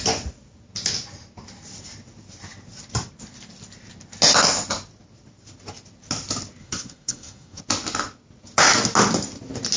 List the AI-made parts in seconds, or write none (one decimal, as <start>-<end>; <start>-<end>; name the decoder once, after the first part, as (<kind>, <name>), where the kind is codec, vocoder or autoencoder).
6.6-7.6 (codec, SNAC)